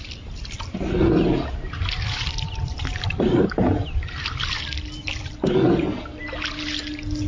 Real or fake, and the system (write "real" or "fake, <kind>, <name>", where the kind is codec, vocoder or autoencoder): real